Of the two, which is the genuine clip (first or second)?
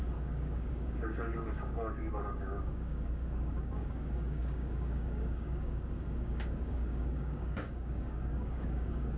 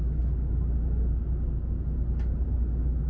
second